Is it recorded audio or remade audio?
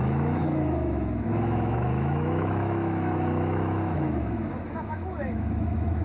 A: remade